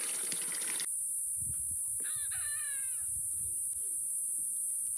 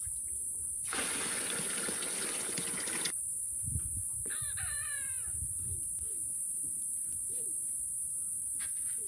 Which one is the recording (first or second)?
first